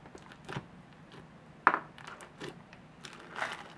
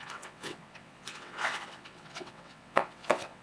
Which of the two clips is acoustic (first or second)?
first